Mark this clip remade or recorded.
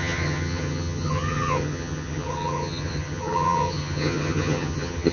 remade